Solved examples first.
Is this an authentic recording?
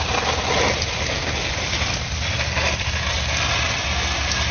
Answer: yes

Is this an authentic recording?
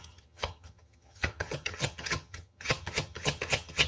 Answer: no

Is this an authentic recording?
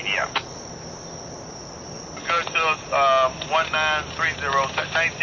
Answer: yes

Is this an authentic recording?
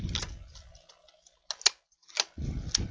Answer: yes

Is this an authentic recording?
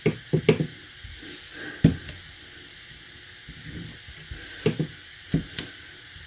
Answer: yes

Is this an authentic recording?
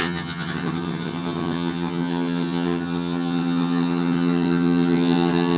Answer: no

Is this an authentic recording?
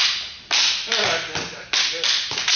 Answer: yes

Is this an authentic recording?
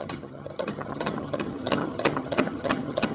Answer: no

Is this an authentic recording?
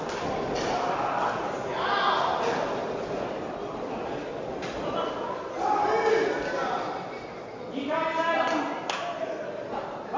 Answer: yes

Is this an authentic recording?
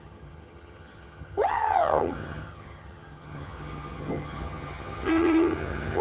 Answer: no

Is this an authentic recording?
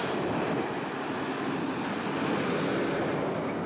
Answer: yes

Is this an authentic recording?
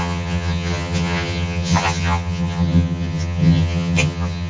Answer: no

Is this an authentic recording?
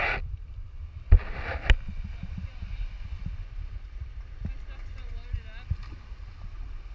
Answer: yes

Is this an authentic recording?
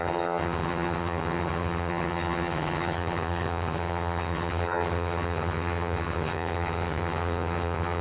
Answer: no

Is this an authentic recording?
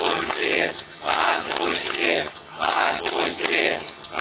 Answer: no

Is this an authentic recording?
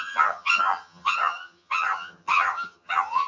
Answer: no